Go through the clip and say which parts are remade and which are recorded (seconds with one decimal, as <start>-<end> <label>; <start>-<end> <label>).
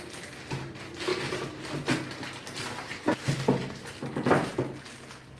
0.0-5.4 recorded